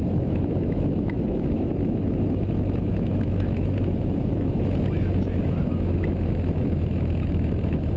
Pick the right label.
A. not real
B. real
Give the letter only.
A